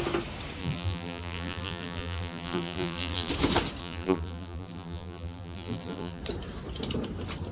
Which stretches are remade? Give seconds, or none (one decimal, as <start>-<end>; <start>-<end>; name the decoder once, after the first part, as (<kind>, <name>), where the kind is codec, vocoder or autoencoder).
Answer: 0.6-3.3 (vocoder, BigVGAN v2); 3.8-6.2